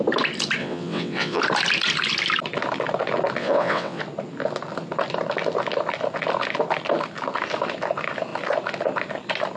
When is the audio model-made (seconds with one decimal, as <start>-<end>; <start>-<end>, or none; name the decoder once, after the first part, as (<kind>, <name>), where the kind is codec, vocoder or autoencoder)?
0.6-1.4 (vocoder, WaveNeXt); 3.4-4.0